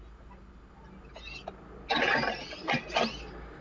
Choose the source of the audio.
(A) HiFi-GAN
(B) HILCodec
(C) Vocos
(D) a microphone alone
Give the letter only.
D